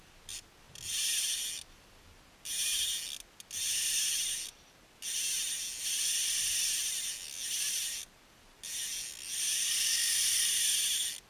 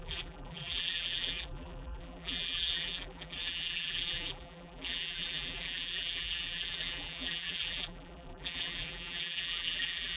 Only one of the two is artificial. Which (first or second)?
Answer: second